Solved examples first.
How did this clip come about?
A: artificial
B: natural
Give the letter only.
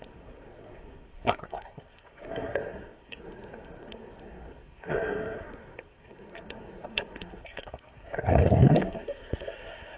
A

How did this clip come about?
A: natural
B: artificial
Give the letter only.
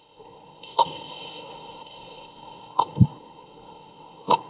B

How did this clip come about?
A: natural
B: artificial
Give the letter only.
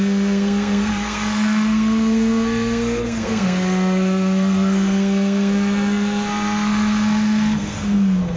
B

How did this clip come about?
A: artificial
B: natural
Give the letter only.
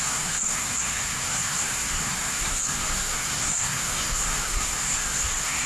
A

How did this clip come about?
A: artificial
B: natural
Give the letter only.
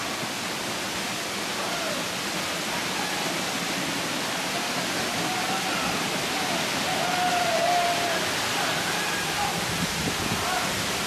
B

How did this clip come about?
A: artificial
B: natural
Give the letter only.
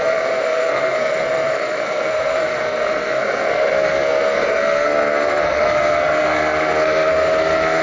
A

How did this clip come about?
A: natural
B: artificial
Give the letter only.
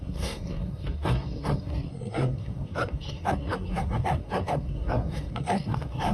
B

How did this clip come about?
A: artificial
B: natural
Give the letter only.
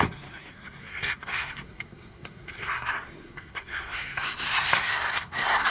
A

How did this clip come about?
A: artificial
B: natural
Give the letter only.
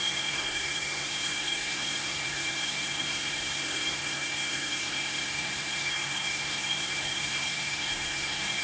A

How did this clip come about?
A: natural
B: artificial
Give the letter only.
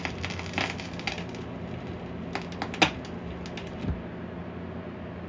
A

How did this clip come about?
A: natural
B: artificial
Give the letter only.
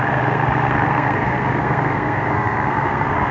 B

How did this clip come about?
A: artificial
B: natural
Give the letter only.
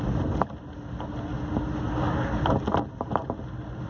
B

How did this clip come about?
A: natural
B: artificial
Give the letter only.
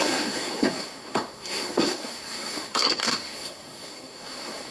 B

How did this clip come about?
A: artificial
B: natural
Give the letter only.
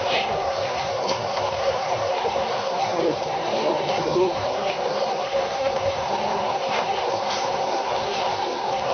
A